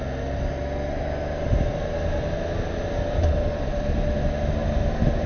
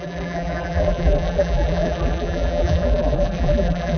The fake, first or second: second